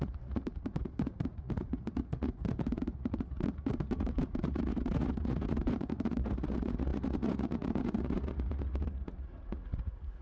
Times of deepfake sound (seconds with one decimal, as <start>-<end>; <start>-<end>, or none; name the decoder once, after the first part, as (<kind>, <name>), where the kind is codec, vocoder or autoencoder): 0.0-10.2 (vocoder, Vocos)